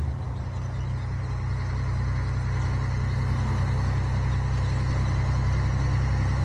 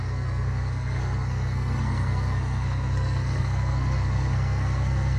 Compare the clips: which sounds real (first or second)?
first